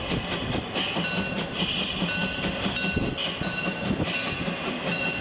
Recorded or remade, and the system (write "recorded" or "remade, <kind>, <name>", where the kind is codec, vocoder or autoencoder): recorded